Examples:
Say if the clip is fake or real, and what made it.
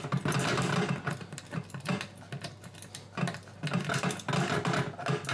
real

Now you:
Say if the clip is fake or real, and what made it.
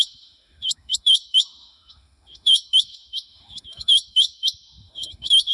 fake, autoencoder, DAC-VAE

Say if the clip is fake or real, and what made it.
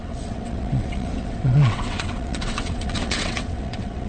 fake, vocoder, WaveNeXt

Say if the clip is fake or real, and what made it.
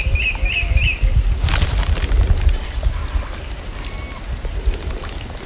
real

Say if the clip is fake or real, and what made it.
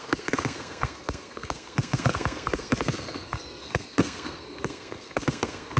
fake, codec, SNAC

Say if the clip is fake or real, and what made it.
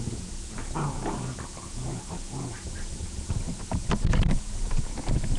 real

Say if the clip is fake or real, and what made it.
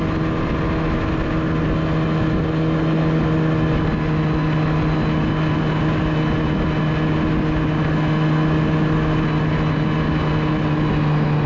real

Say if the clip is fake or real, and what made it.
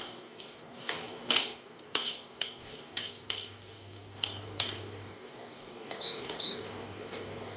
fake, codec, DAC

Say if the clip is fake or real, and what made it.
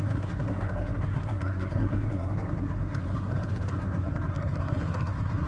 fake, codec, SNAC